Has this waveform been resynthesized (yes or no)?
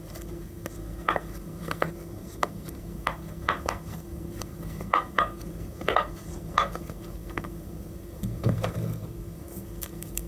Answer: yes